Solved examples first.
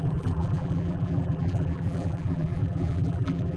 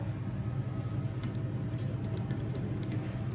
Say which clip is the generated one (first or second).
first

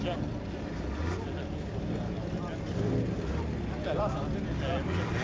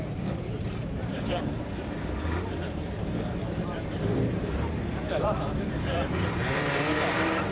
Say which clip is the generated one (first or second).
second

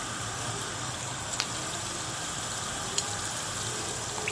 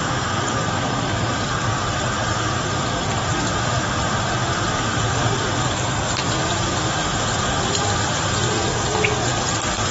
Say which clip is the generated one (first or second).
second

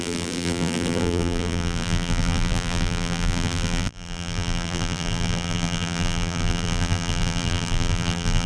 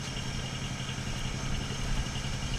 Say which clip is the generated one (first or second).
first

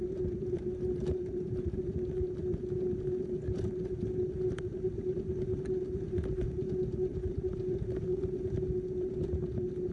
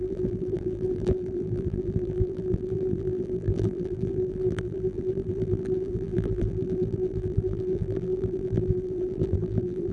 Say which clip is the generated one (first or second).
second